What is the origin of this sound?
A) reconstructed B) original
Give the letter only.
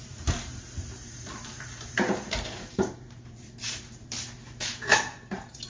A